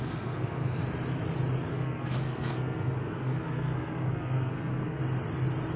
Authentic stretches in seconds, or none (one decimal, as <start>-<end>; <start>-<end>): 0.8-1.7; 5.0-5.8